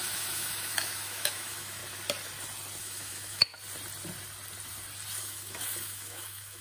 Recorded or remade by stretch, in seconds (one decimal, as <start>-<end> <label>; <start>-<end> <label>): 0.0-1.8 remade; 1.8-2.8 recorded; 2.8-3.5 remade; 3.5-5.2 recorded; 5.2-6.6 remade